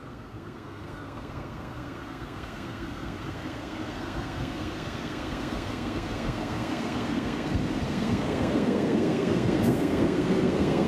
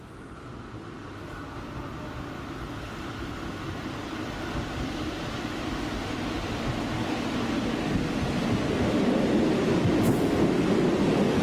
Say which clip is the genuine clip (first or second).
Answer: second